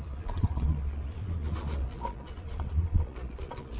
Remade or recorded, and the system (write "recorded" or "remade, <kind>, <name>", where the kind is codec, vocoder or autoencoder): remade, vocoder, Vocos